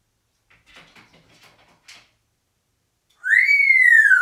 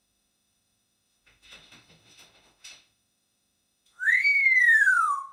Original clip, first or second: first